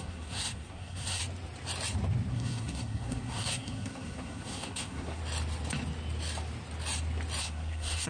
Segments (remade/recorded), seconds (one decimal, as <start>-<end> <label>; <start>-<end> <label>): 0.0-1.2 remade; 1.2-2.3 recorded; 2.3-5.2 remade; 5.2-7.4 recorded; 7.4-8.1 remade